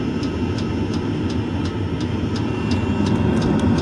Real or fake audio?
real